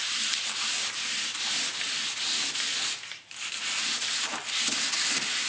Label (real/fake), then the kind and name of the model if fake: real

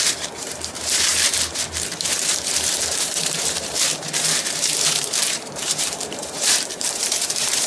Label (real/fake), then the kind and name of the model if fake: fake, vocoder, BigVGAN v2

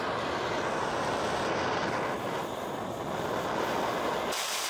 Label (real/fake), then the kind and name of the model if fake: real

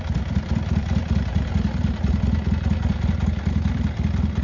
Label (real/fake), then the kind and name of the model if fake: fake, vocoder, BigVGAN v2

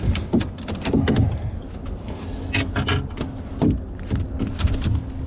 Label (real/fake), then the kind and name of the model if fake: real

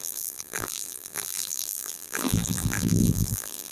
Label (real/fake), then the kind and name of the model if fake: fake, vocoder, BigVGAN v2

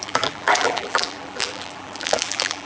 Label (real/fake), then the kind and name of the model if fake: fake, vocoder, BigVGAN v2